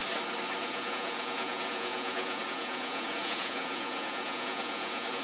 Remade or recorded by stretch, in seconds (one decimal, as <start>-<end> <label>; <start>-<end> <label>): 0.0-0.6 recorded; 0.6-5.2 remade